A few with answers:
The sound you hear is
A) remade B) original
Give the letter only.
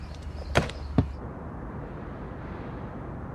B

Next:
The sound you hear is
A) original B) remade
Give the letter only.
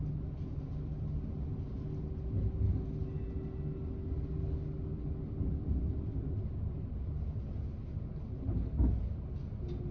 A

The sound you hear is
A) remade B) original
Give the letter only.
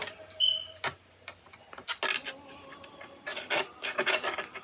B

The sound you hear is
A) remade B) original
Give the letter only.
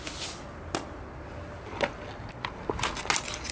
B